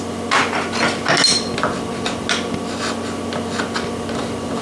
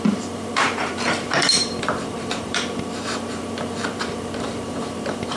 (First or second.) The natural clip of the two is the first